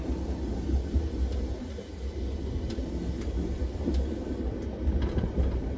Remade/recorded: recorded